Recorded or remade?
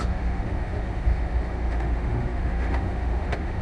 remade